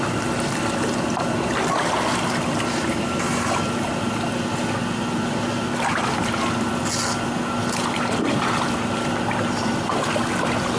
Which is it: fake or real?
real